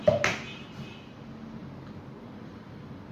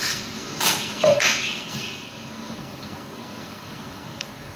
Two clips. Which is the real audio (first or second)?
first